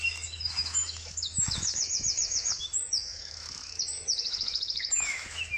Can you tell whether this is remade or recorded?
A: remade